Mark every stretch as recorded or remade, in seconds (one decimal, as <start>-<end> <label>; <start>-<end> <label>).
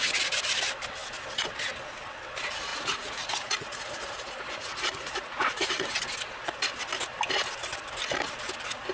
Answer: 0.0-2.7 recorded; 2.7-5.9 remade; 5.9-8.9 recorded